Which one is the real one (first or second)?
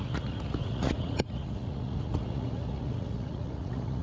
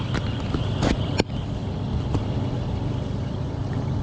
second